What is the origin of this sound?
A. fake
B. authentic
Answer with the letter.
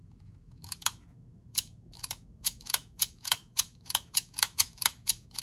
A